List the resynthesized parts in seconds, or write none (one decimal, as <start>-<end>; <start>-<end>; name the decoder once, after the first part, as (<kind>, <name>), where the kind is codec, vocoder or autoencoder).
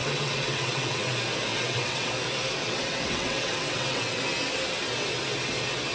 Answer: 0.0-1.1 (vocoder, WaveNeXt); 1.5-2.1; 2.6-4.2